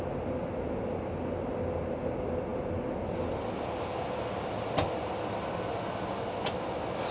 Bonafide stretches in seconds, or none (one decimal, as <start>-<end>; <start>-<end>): 0.0-7.1